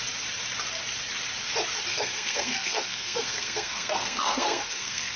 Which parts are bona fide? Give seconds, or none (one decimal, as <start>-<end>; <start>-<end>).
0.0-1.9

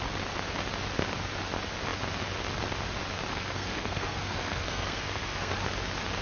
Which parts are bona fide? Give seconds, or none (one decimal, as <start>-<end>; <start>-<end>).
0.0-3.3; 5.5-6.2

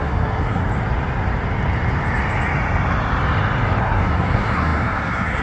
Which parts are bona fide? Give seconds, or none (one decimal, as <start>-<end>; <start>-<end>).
0.6-3.8